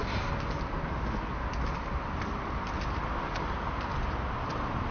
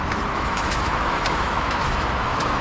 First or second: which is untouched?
first